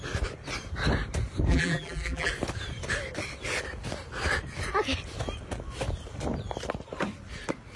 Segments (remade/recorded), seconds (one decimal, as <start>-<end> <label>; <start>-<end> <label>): 0.0-1.5 recorded; 1.5-2.3 remade; 2.3-7.8 recorded